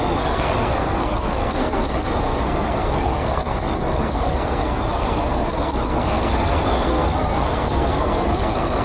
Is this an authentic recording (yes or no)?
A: no